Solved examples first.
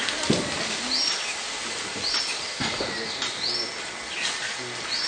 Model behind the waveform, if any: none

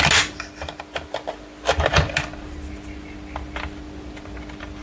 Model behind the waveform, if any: none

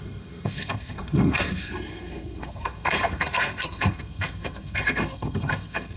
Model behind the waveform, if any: codec, SNAC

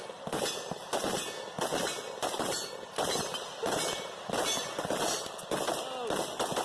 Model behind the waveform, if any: none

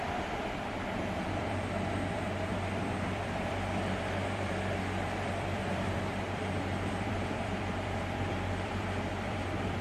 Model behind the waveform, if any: vocoder, BigVGAN v2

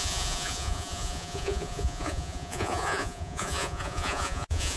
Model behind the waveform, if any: vocoder, Vocos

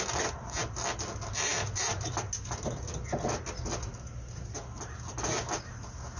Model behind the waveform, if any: none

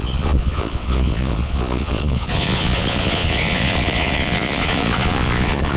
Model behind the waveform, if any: vocoder, Vocos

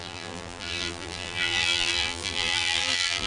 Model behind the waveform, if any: vocoder, BigVGAN v2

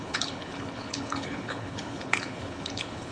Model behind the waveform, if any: codec, HILCodec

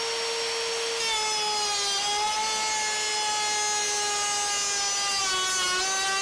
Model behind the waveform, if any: none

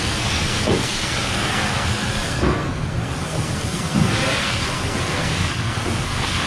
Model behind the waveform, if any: codec, SNAC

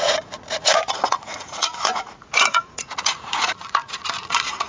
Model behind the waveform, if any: vocoder, Vocos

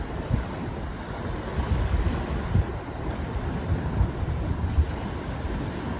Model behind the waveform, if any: none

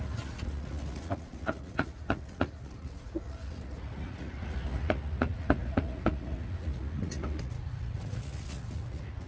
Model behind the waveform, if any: vocoder, Vocos